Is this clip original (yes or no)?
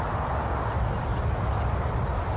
yes